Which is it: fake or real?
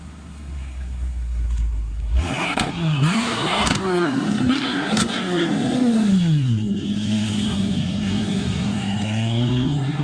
fake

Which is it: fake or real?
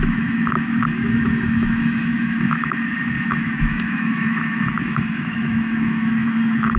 fake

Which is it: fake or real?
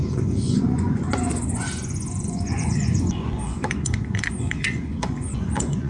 fake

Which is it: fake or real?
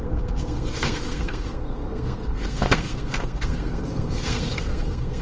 fake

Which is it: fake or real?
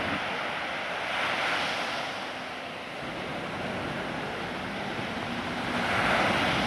real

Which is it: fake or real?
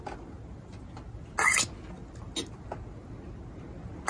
real